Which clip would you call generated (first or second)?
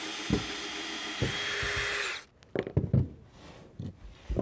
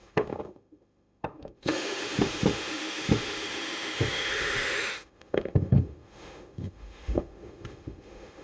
second